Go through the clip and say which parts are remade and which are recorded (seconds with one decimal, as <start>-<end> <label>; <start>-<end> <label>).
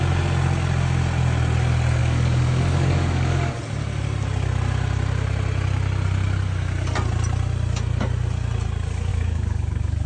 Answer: 0.0-2.0 recorded; 2.0-3.6 remade; 3.6-9.1 recorded; 9.1-10.1 remade